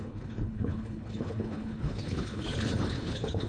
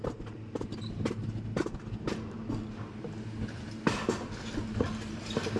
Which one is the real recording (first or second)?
second